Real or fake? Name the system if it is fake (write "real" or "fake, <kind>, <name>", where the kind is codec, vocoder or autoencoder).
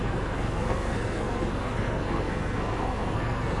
fake, codec, SNAC